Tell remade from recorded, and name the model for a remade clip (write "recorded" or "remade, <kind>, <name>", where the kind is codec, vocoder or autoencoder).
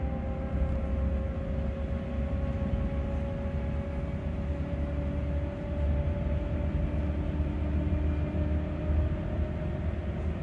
recorded